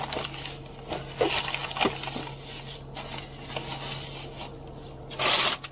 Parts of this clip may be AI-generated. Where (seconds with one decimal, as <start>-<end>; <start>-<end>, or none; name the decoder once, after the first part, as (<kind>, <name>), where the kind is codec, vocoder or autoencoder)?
none